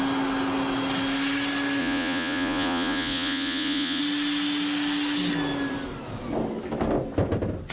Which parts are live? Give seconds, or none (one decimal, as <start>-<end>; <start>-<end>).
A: 0.0-1.8; 4.0-7.7